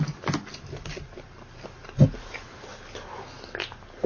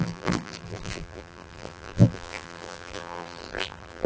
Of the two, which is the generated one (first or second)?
second